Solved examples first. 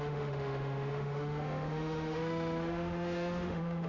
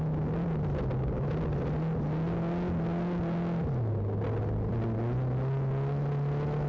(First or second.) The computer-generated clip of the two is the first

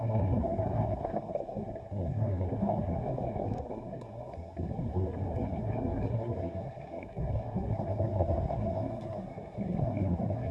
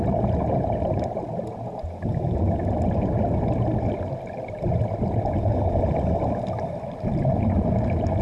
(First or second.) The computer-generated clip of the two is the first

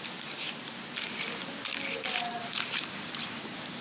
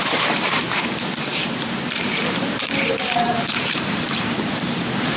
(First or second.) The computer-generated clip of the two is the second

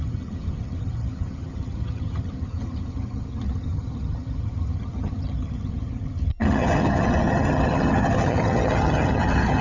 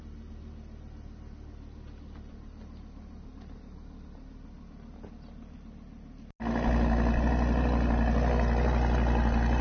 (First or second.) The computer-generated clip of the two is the first